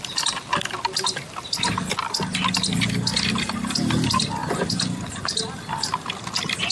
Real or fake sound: real